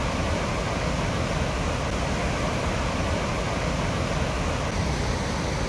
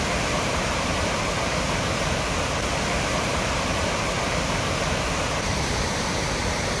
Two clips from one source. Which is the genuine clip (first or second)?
first